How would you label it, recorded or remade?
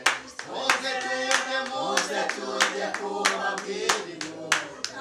recorded